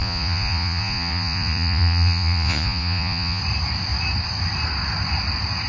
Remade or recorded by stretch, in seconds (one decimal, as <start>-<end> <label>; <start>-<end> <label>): 0.0-3.4 remade; 3.4-5.7 recorded